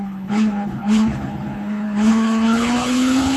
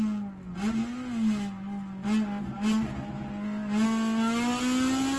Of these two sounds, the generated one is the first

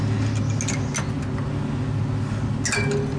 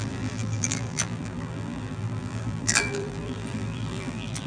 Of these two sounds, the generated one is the second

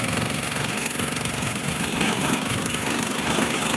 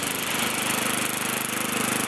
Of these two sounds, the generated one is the first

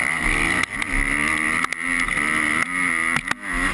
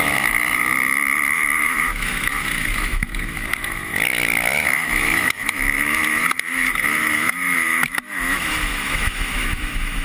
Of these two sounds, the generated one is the second